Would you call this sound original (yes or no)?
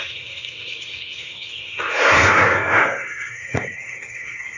no